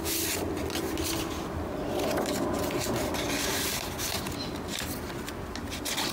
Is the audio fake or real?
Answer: real